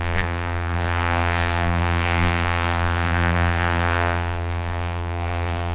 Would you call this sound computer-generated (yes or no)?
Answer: yes